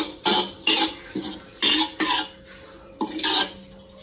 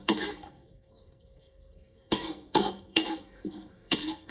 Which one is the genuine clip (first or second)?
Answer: first